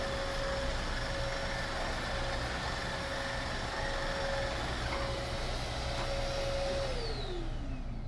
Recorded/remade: recorded